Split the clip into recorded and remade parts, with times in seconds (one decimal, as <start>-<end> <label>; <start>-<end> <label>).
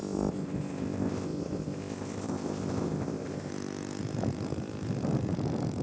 0.0-3.5 remade; 3.5-5.8 recorded